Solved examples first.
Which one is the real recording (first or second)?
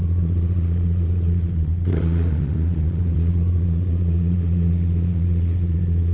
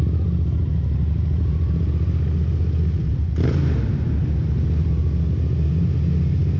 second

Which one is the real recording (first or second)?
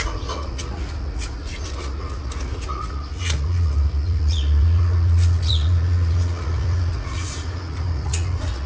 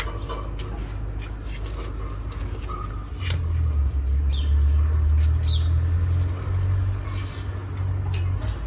second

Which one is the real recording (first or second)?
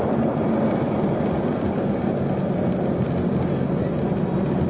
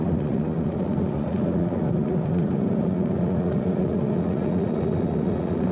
first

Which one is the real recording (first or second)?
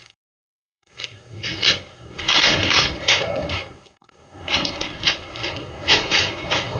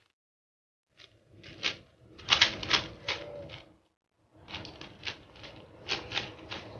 second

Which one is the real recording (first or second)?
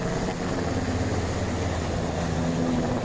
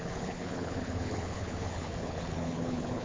first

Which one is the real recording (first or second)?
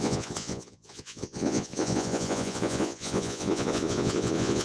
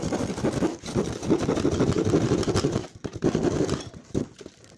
second